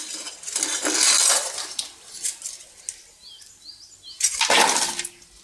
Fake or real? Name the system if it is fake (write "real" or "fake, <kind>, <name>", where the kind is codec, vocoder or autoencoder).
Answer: real